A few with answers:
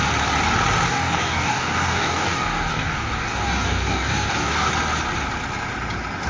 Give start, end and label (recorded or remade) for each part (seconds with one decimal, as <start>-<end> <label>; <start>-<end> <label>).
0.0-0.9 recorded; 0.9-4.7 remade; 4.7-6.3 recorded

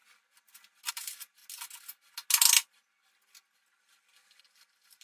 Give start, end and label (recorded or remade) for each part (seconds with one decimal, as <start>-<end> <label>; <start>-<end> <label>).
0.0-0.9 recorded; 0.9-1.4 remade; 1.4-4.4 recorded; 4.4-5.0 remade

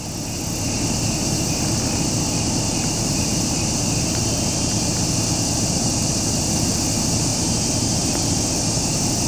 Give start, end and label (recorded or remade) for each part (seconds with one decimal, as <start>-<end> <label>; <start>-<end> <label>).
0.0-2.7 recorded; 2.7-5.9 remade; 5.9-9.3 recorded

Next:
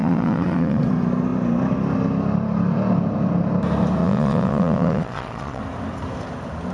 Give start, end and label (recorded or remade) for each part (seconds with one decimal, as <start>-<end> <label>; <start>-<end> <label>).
0.0-0.8 remade; 0.8-4.0 recorded; 4.0-5.6 remade; 5.6-6.7 recorded

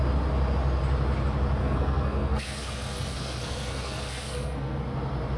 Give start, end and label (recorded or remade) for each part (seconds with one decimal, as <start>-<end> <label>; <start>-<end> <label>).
0.0-1.6 recorded; 1.6-4.8 remade; 4.8-5.4 recorded